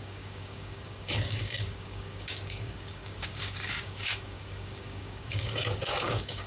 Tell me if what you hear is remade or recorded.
remade